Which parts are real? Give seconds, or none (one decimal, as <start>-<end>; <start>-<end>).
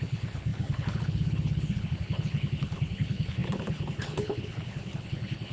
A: none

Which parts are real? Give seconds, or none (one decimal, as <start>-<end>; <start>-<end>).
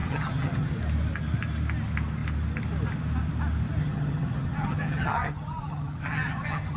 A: 0.7-3.8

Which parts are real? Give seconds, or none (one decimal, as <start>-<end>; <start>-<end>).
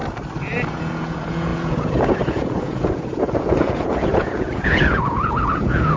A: 0.0-0.7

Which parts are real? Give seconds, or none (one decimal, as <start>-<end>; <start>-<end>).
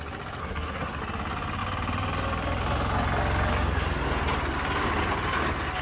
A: 0.0-0.4; 1.0-5.8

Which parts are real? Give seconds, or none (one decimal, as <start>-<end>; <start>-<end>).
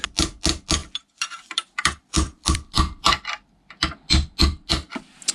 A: 0.0-0.8; 3.8-5.3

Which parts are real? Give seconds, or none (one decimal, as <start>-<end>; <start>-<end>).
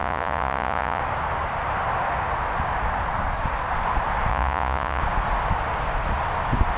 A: 1.0-4.3; 5.0-6.8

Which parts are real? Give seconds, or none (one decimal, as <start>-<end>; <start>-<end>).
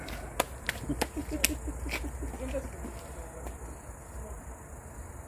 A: 0.0-5.3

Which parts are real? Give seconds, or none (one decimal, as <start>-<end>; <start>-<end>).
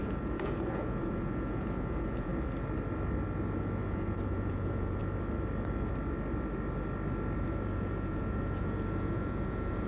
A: 2.3-3.6; 5.0-7.4